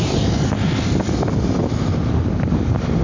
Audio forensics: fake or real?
real